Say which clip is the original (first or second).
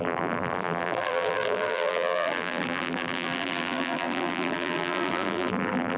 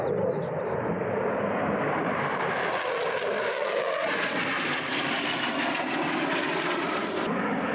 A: second